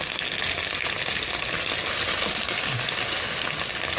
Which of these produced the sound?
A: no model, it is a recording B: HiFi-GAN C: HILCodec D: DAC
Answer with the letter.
A